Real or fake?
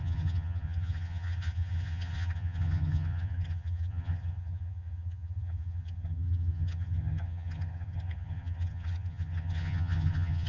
fake